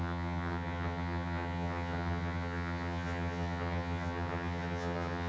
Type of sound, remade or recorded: remade